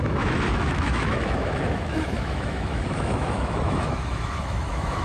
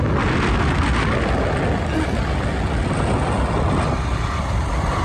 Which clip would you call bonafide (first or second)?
second